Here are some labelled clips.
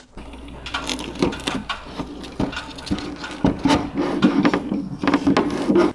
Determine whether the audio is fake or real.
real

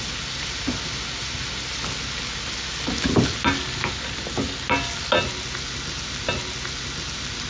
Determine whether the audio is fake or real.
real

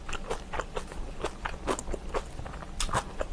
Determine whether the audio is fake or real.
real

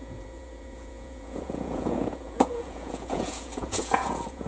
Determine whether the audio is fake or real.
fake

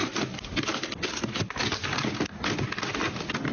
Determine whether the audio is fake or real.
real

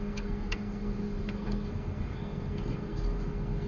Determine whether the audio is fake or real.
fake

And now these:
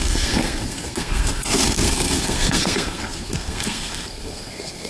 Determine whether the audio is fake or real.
fake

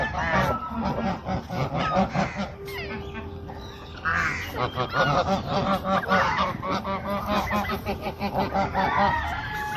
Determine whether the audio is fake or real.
real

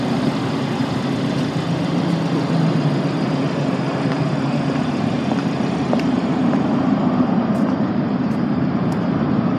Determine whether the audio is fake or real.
fake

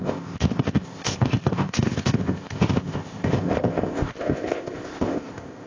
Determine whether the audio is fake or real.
fake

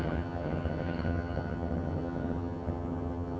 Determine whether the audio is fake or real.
fake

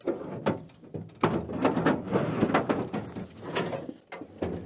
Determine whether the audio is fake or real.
real